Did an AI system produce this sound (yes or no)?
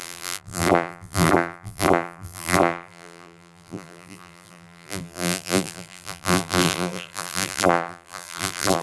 yes